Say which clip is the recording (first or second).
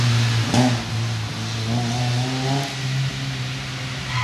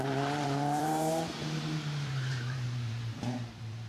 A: first